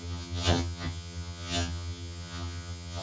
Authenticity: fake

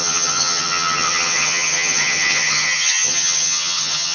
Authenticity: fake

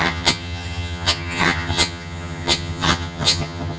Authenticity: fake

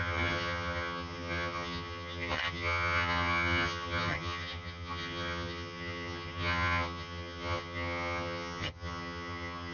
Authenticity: fake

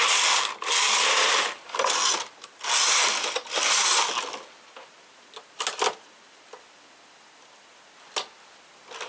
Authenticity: real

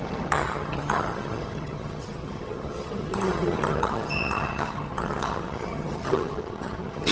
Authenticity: fake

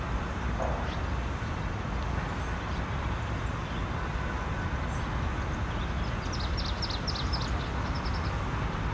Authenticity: real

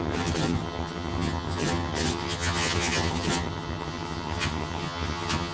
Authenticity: fake